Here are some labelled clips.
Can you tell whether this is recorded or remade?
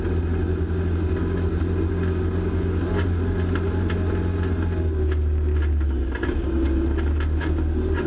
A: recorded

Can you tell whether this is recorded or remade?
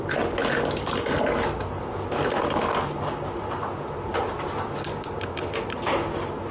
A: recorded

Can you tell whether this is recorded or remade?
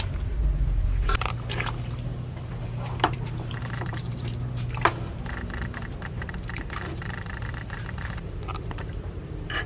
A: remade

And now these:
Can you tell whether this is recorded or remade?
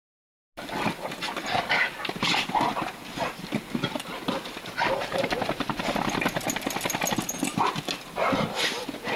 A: recorded